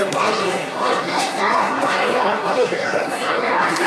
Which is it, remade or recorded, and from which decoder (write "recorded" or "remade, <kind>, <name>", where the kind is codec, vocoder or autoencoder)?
remade, codec, SNAC